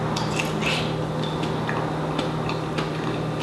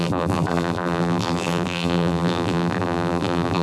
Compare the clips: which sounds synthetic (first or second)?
second